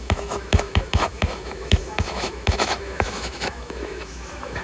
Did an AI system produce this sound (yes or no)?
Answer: yes